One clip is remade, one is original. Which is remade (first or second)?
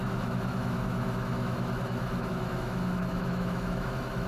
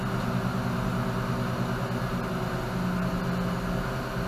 first